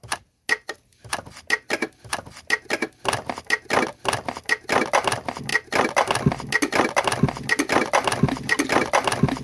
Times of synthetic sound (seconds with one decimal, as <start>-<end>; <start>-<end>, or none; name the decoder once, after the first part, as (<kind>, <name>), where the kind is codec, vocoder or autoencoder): none